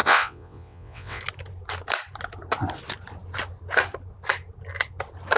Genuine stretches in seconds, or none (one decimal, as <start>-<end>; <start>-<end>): 1.2-5.4